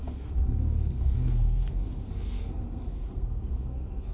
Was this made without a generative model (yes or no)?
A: no